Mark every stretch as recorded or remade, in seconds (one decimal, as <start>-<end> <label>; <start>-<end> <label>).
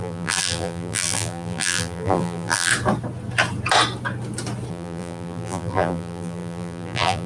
0.0-2.7 remade; 2.7-4.7 recorded; 4.7-7.3 remade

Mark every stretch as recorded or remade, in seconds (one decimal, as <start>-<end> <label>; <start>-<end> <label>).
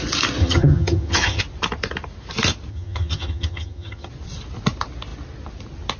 0.0-0.4 recorded; 0.4-1.4 remade; 1.4-2.7 recorded; 2.7-4.1 remade; 4.1-6.0 recorded